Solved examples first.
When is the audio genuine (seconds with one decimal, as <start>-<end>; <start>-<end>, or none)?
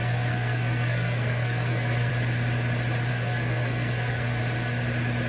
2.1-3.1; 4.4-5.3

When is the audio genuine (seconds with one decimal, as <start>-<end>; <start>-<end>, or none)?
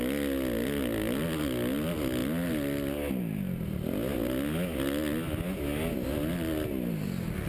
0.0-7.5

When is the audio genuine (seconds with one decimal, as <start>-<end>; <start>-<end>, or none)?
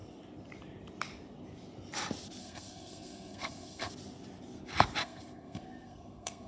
0.0-2.4; 3.9-5.0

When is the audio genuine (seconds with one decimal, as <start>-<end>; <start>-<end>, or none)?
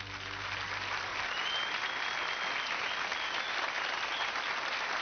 0.0-5.0